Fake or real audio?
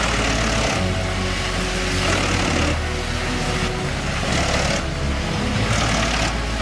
real